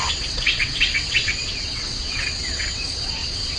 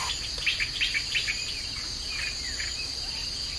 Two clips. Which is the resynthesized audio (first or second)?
first